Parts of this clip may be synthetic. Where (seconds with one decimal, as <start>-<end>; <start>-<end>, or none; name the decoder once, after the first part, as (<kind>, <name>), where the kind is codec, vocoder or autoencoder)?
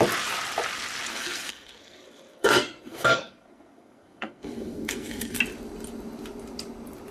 1.1-5.4 (codec, SNAC)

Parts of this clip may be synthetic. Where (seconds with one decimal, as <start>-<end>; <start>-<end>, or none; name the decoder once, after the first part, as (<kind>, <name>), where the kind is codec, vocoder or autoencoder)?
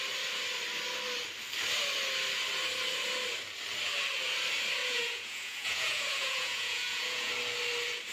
4.8-7.3 (vocoder, Vocos)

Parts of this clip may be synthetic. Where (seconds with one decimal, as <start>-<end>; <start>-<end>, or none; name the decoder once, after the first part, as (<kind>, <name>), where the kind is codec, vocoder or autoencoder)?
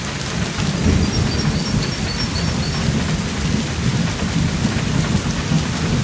none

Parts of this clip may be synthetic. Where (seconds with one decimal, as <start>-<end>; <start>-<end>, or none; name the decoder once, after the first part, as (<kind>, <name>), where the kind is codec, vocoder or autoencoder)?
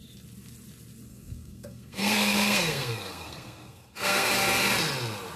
1.1-4.3 (codec, SNAC)